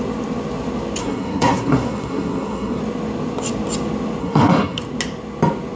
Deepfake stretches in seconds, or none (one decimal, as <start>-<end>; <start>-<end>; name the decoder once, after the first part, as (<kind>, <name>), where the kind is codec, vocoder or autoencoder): 1.0-2.8 (codec, SNAC); 4.2-4.8